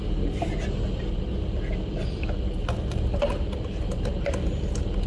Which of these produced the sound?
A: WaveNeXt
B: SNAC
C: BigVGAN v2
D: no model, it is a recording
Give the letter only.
D